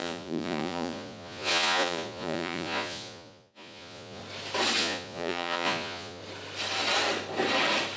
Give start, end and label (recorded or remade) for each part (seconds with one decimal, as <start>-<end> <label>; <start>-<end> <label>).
0.0-4.2 remade; 4.2-4.8 recorded; 4.8-6.2 remade; 6.2-8.0 recorded